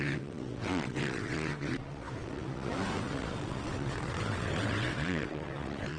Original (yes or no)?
no